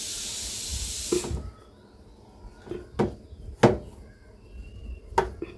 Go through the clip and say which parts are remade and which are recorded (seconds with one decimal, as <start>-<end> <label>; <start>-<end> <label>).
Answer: 0.0-5.6 recorded